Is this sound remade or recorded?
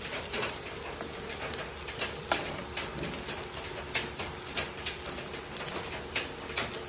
recorded